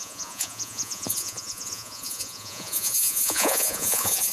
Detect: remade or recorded remade